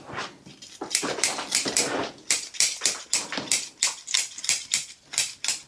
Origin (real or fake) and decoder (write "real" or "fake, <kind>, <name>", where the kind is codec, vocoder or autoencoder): real